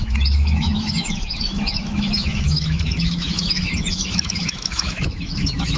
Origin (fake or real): fake